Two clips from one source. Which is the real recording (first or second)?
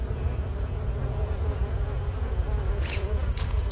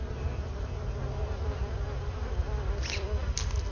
second